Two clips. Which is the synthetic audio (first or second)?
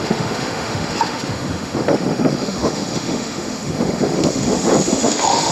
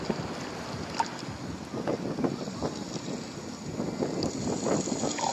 first